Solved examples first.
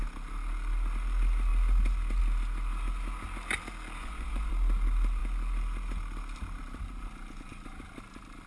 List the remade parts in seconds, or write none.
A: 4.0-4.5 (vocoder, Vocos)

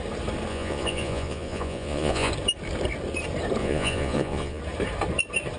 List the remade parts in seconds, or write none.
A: 0.5-2.3 (vocoder, Vocos); 3.6-4.6

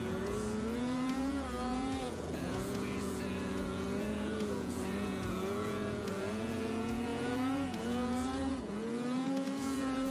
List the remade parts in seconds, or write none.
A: 0.0-10.1 (vocoder, Vocos)

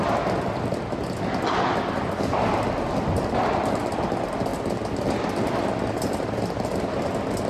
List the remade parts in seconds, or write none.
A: none

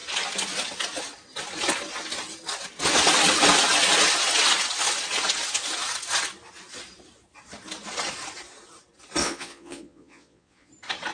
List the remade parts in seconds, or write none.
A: 9.2-10.7 (vocoder, Vocos)